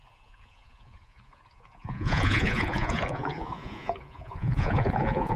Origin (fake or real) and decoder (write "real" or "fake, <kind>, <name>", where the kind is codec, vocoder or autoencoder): fake, vocoder, Vocos